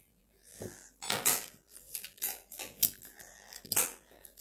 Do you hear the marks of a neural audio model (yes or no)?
yes